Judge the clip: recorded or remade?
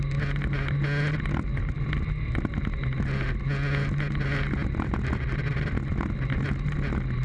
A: recorded